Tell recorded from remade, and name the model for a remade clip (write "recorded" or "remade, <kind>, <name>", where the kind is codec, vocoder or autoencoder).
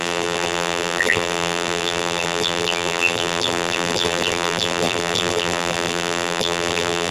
remade, vocoder, BigVGAN v2